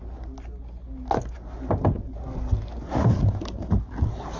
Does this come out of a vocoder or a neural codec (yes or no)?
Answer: no